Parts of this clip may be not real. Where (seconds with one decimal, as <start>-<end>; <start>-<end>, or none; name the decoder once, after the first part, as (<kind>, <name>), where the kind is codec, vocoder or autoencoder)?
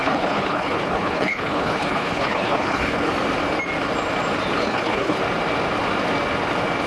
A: 0.0-3.1 (codec, HILCodec); 4.6-5.2